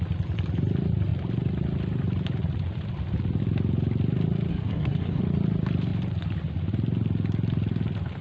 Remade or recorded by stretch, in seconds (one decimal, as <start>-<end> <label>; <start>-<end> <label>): 0.0-4.5 recorded; 4.5-5.2 remade; 5.2-8.2 recorded